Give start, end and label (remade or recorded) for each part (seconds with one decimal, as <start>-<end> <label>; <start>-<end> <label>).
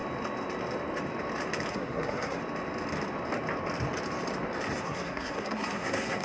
0.0-1.7 recorded; 1.7-2.4 remade; 2.4-4.8 recorded; 4.8-6.2 remade